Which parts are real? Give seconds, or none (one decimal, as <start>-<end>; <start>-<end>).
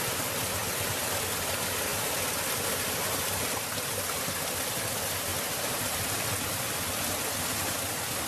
0.0-1.9; 3.5-5.3; 6.3-8.3